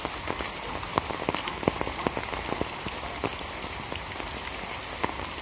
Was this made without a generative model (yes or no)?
yes